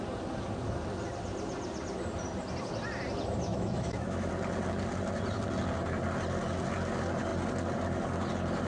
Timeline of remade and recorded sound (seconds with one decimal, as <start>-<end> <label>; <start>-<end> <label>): 0.0-3.5 recorded; 3.5-4.3 remade; 4.3-8.7 recorded